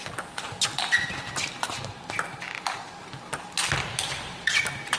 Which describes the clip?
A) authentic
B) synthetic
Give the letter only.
A